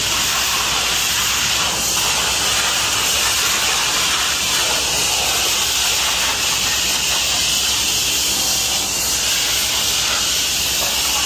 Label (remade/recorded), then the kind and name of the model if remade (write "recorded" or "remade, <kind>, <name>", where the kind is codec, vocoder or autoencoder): recorded